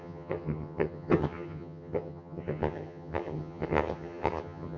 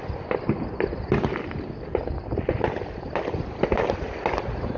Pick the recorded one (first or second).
second